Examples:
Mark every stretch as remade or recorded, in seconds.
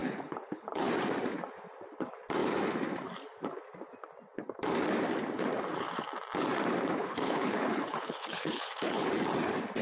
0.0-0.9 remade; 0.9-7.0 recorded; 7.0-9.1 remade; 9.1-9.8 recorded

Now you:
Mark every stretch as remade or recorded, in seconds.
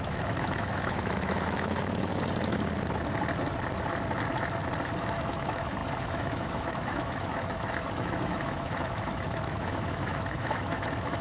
0.0-2.1 remade; 2.1-5.0 recorded; 5.0-11.2 remade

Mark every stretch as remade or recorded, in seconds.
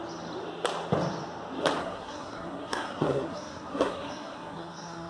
0.0-1.8 recorded; 1.8-5.1 remade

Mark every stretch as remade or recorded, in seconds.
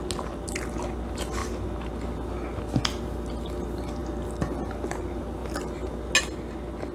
0.0-6.9 recorded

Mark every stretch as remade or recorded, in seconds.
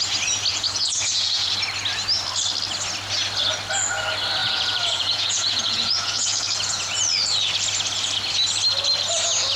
0.0-0.5 recorded; 0.5-1.5 remade; 1.5-4.4 recorded; 4.4-6.8 remade; 6.8-9.6 recorded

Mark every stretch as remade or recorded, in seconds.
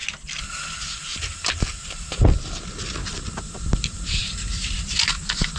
0.0-5.6 recorded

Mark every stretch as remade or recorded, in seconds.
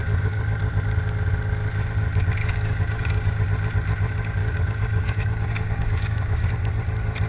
0.0-0.6 remade; 0.6-2.4 recorded; 2.4-3.3 remade; 3.3-4.4 recorded; 4.4-6.5 remade; 6.5-7.3 recorded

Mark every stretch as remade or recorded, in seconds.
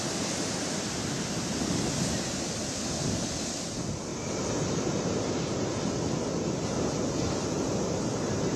0.0-8.6 recorded